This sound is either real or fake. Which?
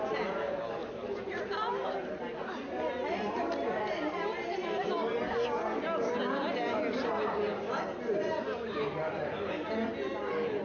real